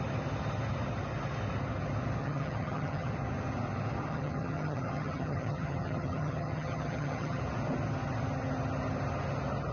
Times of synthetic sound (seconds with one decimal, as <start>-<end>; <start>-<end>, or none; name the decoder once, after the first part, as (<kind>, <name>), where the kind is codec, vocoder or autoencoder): 2.2-3.1 (vocoder, HiFi-GAN); 4.1-7.4